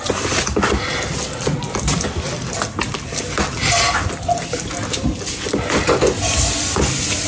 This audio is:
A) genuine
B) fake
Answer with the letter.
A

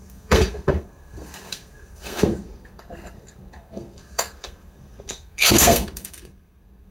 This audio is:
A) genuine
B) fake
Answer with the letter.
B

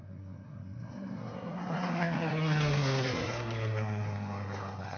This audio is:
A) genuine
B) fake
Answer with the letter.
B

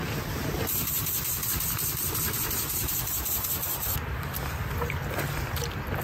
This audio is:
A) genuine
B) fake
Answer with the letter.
A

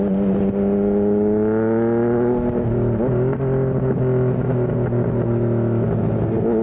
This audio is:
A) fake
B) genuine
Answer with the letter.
B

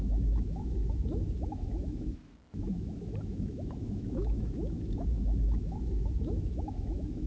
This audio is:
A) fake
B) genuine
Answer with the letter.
A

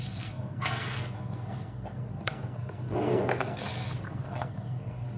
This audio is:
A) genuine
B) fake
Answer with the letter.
B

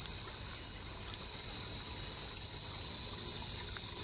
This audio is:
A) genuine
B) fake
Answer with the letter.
A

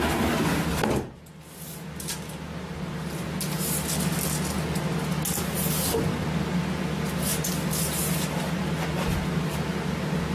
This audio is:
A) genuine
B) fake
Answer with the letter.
A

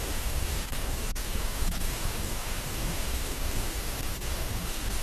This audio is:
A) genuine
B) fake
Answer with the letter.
B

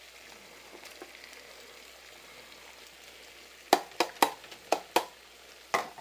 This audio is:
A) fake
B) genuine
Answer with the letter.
B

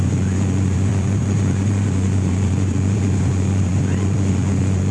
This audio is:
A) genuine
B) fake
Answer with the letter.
B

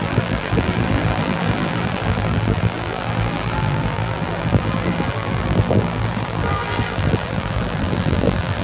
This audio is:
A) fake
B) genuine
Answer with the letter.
A